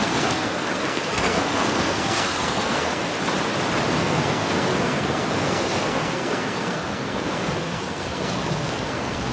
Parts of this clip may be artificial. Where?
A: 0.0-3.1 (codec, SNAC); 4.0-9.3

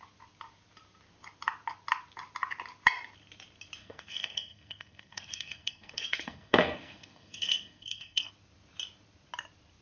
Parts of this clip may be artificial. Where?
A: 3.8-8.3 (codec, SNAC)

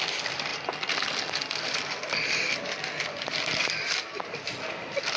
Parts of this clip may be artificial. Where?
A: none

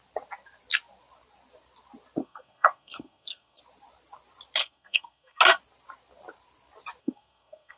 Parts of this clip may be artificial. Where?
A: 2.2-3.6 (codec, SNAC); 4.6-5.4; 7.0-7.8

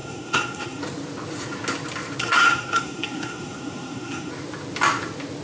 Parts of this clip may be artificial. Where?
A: 0.0-0.8 (codec, SNAC); 2.2-4.3

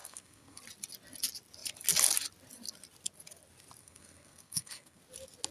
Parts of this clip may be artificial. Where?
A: 0.0-0.6 (codec, SNAC); 3.8-5.0

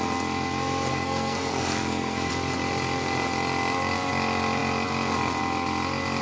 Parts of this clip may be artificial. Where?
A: 0.9-2.3 (codec, SNAC)